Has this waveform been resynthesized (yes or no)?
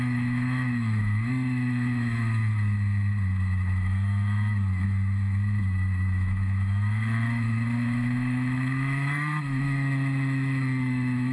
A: yes